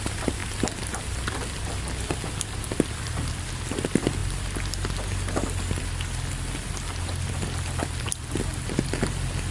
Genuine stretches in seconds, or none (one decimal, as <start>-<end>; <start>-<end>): 0.0-9.5